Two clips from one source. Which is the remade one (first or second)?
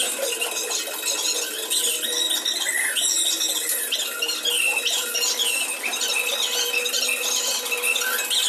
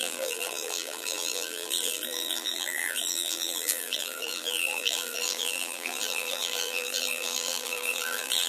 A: second